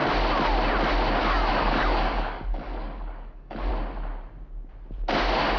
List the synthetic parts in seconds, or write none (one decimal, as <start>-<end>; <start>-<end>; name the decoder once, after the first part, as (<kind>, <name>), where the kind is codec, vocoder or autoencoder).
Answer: 1.2-3.7 (codec, DAC)